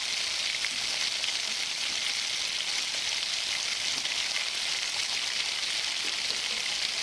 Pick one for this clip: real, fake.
real